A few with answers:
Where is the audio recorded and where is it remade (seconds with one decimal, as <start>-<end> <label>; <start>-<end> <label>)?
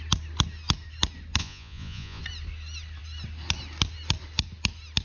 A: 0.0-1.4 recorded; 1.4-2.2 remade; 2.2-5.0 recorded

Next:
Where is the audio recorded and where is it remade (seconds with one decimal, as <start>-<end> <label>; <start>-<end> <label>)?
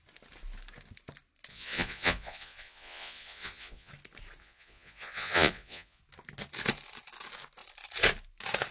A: 0.0-1.5 recorded; 1.5-3.9 remade; 3.9-4.4 recorded; 4.4-6.0 remade; 6.0-8.7 recorded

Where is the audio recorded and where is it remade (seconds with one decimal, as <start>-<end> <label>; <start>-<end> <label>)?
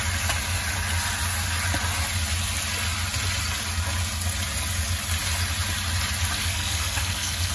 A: 0.0-6.4 recorded; 6.4-7.5 remade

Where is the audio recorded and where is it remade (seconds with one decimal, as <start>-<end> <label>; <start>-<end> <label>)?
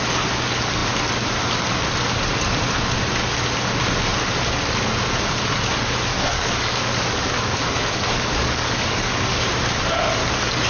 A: 0.0-6.1 recorded; 6.1-9.4 remade; 9.4-10.7 recorded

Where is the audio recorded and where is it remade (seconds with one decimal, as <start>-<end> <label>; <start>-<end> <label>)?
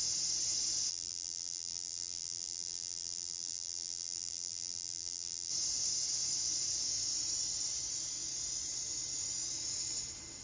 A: 0.0-0.9 recorded; 0.9-5.5 remade; 5.5-10.4 recorded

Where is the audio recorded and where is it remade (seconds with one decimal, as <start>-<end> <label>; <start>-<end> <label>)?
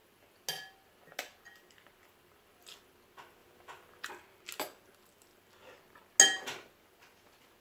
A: 0.0-7.6 recorded